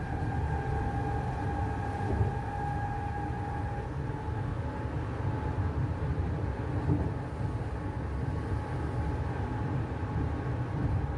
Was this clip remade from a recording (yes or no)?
no